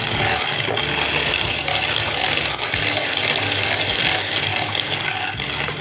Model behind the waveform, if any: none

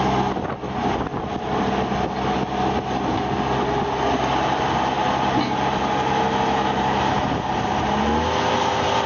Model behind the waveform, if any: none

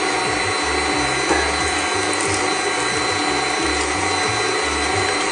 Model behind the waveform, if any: none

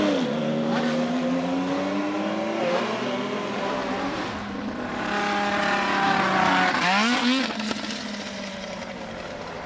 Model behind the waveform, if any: none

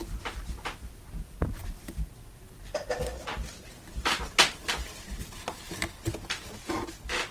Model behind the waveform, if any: none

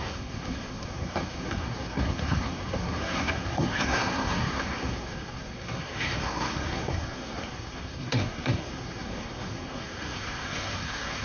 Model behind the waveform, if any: codec, SNAC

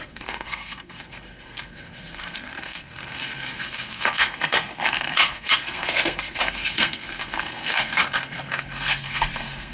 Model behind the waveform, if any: codec, SNAC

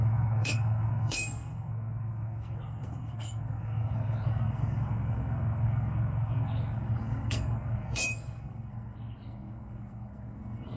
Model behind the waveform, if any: codec, SNAC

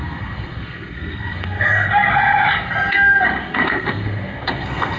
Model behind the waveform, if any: codec, SNAC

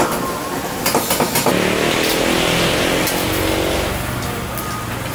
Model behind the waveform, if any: none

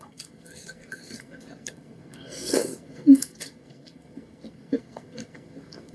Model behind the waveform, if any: codec, SNAC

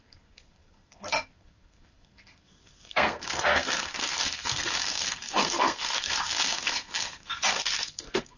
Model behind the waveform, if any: codec, SNAC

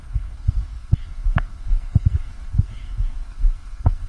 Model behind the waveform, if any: codec, SNAC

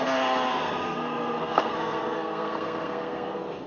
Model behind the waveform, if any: codec, SNAC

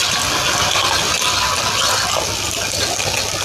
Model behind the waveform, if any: none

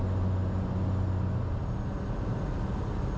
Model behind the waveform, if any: none